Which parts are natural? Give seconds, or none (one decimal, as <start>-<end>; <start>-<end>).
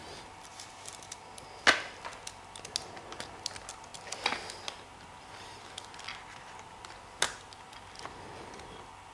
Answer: 0.0-9.1